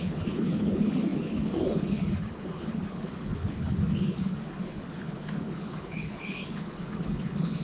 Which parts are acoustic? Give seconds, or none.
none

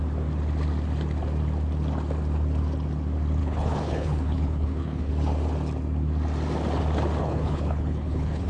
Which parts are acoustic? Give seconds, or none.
0.0-3.4; 5.1-7.2

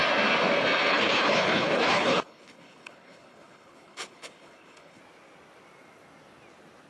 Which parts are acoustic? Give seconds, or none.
0.0-0.9; 5.0-6.9

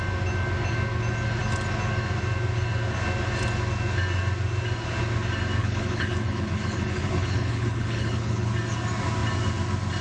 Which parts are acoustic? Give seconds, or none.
0.0-5.6; 8.5-10.0

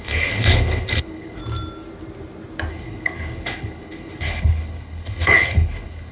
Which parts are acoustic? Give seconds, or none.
1.4-2.7